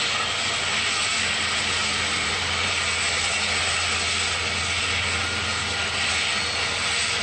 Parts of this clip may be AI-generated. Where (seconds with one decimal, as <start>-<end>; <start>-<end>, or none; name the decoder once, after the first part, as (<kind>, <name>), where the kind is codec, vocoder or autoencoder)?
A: 1.8-2.7 (vocoder, BigVGAN v2)